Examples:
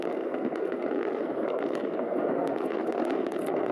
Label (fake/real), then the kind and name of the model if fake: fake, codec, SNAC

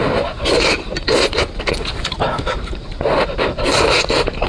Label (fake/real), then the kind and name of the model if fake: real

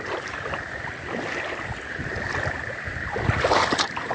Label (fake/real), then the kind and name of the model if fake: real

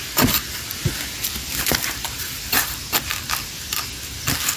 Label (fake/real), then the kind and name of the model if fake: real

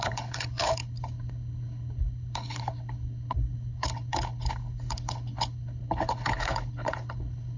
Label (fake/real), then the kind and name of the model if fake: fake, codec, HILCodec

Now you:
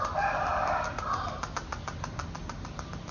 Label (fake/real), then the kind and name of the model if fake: real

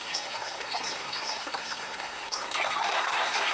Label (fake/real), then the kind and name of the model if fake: fake, codec, SNAC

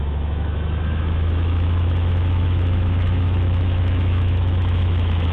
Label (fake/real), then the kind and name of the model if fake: fake, autoencoder, DAC-VAE